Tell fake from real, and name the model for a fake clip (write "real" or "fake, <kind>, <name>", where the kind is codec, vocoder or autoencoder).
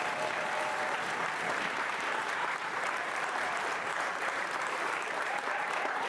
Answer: fake, vocoder, BigVGAN v2